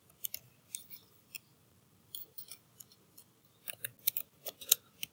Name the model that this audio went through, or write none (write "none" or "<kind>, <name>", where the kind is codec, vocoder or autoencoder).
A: none